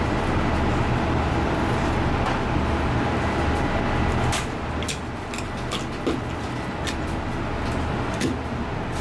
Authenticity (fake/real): real